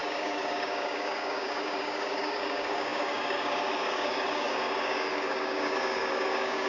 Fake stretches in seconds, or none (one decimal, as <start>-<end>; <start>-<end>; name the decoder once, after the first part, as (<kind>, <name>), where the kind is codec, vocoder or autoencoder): 0.0-6.7 (codec, DAC)